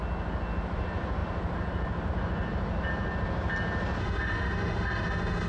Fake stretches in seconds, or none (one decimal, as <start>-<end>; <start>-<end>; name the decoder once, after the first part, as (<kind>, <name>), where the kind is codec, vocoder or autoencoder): 4.0-5.5 (autoencoder, DAC-VAE)